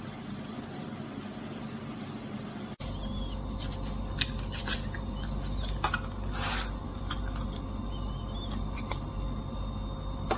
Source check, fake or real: real